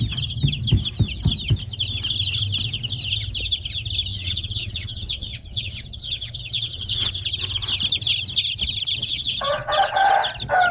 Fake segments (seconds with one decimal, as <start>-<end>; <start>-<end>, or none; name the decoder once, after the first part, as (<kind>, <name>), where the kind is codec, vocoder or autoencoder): 4.1-7.1 (vocoder, WaveNeXt); 9.0-10.1

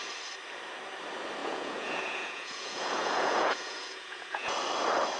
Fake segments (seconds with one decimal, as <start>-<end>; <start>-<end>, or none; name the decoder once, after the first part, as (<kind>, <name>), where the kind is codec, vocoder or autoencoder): 1.4-4.5 (vocoder, Vocos)

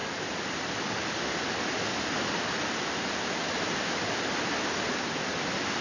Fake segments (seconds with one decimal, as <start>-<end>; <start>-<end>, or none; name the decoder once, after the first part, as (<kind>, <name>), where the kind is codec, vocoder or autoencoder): none

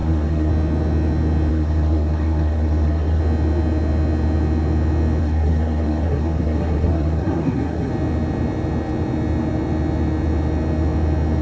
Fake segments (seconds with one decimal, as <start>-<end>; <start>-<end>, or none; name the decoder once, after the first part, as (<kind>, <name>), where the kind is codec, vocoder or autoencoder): 0.0-0.5 (codec, SNAC); 1.5-3.2; 5.2-7.9